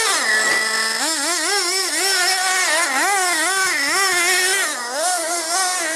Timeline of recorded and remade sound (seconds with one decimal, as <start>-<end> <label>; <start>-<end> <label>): 0.0-6.0 recorded